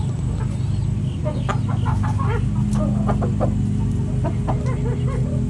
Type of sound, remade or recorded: recorded